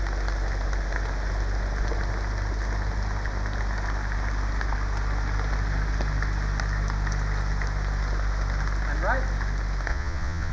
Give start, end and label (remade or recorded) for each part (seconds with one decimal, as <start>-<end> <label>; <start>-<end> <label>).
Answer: 0.0-9.9 recorded; 9.9-10.5 remade